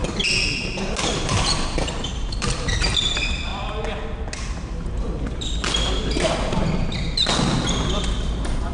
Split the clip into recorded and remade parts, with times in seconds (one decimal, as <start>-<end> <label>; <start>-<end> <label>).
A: 0.0-1.0 recorded; 1.0-3.5 remade; 3.5-8.7 recorded